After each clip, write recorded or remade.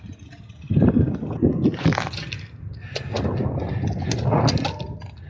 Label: recorded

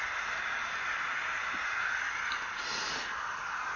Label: recorded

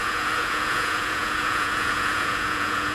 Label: remade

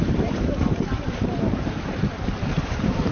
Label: remade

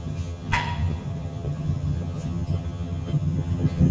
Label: remade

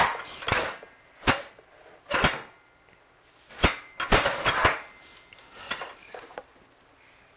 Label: recorded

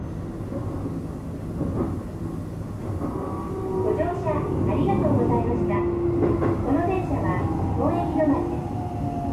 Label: recorded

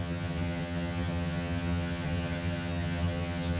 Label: remade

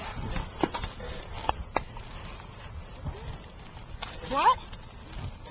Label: recorded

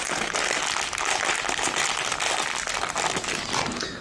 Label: recorded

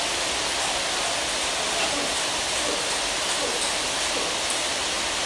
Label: recorded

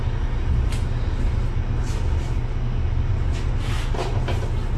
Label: recorded